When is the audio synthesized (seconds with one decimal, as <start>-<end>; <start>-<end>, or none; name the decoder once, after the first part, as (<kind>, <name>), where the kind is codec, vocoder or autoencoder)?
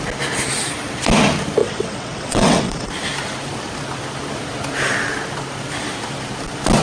1.6-2.9 (vocoder, WaveNeXt)